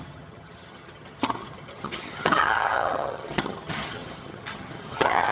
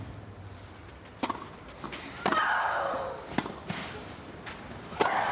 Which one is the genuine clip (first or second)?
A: second